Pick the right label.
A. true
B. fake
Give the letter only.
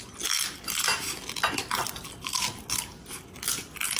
A